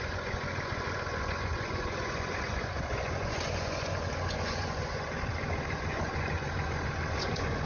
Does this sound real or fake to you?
fake